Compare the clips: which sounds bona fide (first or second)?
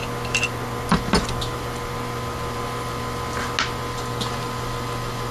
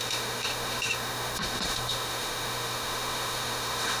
first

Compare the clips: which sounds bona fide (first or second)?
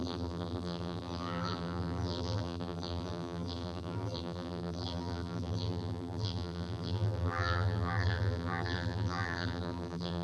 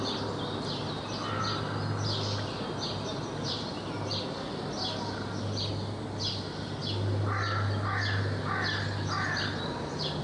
second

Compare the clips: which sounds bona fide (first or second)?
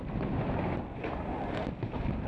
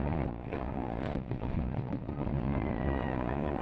first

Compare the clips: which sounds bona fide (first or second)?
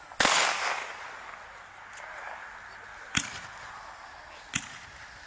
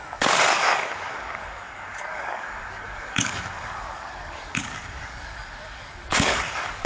first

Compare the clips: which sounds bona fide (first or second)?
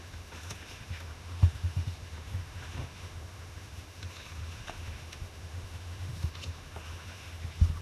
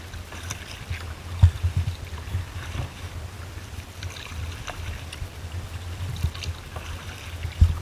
second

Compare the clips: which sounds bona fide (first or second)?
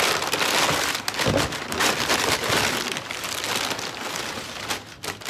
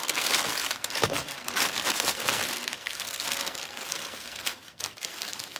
first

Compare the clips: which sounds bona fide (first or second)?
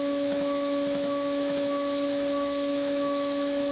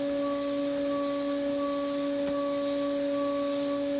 second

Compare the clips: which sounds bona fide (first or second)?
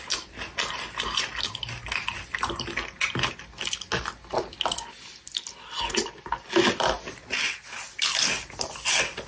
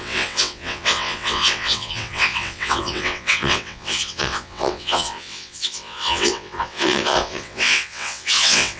first